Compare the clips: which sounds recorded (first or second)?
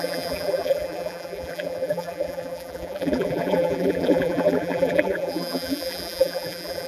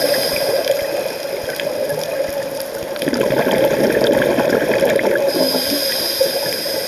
second